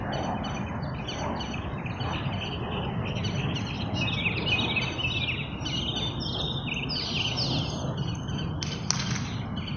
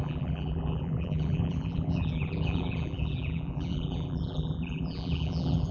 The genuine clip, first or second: first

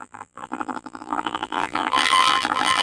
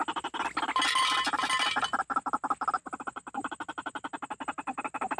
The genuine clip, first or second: second